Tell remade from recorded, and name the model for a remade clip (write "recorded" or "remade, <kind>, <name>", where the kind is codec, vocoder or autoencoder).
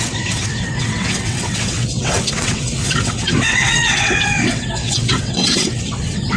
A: remade, vocoder, WaveNeXt